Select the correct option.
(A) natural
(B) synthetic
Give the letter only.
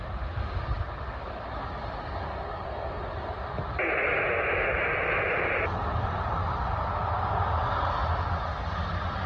A